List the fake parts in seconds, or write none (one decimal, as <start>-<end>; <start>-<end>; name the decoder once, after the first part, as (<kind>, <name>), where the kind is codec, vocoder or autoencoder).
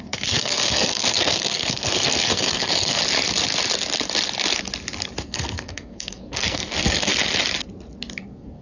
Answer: 0.0-3.0 (codec, SNAC); 5.2-7.1; 8.2-8.6